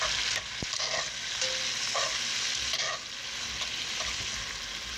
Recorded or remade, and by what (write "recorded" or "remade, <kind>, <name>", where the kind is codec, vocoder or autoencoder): recorded